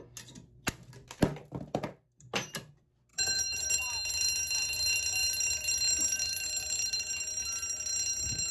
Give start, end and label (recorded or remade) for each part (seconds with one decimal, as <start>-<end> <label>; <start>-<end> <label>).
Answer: 0.0-1.3 recorded; 1.3-1.8 remade; 1.8-3.1 recorded; 3.1-3.7 remade; 3.7-5.2 recorded; 5.2-7.1 remade; 7.1-8.5 recorded